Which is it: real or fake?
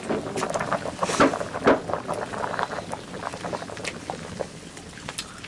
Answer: real